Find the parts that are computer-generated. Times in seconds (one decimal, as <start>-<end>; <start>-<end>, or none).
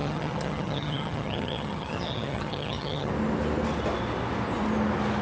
0.0-3.1